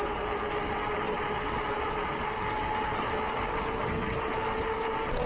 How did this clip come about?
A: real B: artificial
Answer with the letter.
A